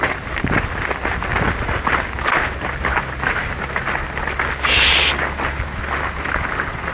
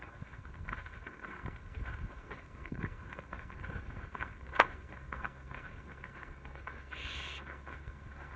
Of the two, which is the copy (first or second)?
second